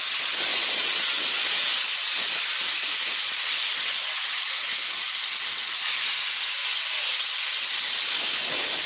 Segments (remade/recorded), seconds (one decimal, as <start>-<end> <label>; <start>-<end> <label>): 0.0-0.5 recorded; 0.5-5.5 remade; 5.5-8.9 recorded